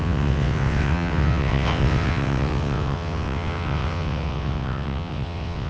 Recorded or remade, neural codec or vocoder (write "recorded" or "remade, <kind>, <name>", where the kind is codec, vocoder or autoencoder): remade, vocoder, WaveNeXt